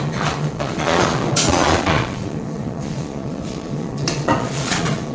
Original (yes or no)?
no